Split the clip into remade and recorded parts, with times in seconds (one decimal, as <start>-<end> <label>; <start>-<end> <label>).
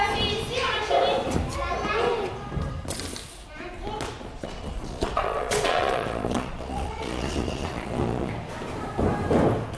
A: 0.0-4.3 recorded; 4.3-8.3 remade; 8.3-9.8 recorded